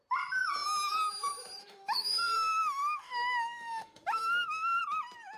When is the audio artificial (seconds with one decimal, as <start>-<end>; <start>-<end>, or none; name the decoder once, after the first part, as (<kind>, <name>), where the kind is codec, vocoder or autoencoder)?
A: 1.6-4.8 (autoencoder, DAC-VAE)